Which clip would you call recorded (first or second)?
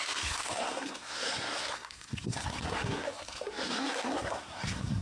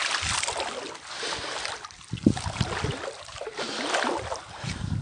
second